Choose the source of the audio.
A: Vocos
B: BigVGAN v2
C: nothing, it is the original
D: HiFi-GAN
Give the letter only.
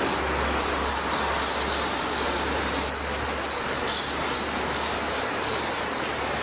C